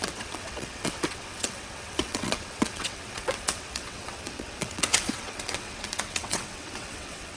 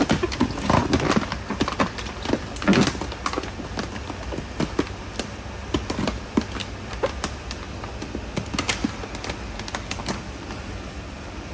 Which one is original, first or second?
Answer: second